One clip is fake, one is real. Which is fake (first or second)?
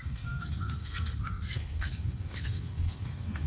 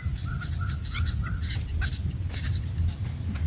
first